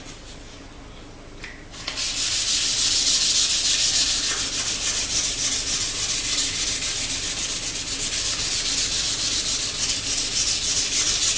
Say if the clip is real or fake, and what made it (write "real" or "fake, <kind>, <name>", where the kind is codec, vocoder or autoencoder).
real